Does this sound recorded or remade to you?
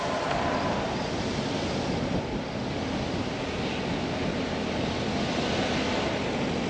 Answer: recorded